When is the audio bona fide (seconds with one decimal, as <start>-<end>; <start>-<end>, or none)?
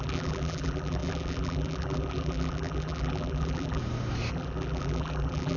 3.8-4.3